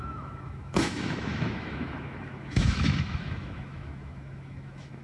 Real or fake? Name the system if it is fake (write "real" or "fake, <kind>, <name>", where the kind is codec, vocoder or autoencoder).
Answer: fake, autoencoder, DAC-VAE